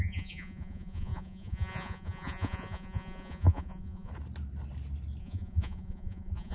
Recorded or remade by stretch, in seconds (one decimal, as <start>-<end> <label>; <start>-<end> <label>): 0.0-4.1 remade; 4.1-5.2 recorded; 5.2-6.5 remade